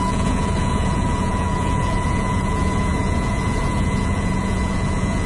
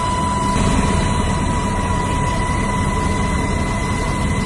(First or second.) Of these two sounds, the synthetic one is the first